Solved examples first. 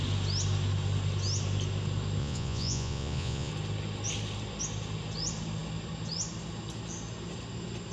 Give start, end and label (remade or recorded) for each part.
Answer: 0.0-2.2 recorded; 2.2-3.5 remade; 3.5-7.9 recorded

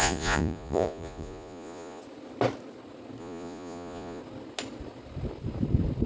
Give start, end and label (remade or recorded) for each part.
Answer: 0.0-2.0 remade; 2.0-3.2 recorded; 3.2-4.2 remade; 4.2-6.1 recorded